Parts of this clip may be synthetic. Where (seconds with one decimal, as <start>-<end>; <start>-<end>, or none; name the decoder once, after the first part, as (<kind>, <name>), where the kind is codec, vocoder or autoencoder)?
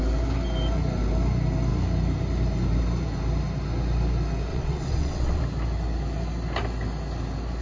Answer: 4.5-5.4 (vocoder, WaveNeXt)